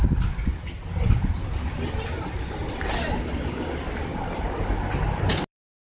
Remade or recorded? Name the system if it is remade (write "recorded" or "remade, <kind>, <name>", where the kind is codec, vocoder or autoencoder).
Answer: recorded